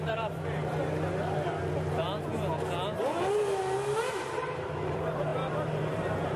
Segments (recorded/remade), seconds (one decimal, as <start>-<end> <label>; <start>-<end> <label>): 0.0-0.6 remade; 0.6-4.1 recorded; 4.1-6.4 remade